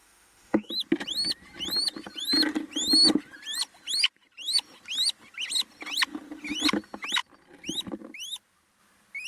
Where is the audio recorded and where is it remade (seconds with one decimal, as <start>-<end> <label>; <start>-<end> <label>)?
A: 0.0-0.7 remade; 0.7-9.3 recorded